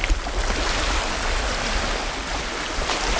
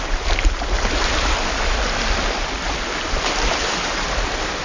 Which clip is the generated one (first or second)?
second